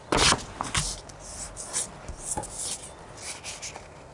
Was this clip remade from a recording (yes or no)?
no